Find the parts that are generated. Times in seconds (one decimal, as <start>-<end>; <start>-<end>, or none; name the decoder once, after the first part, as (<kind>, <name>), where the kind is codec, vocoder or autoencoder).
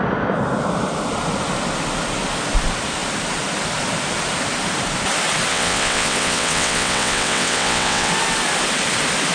5.5-8.1 (vocoder, WaveNeXt)